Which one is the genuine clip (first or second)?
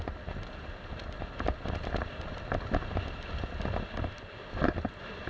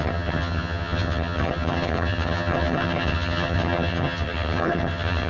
first